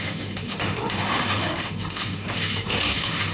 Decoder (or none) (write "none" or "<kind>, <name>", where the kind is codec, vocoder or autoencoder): autoencoder, DAC-VAE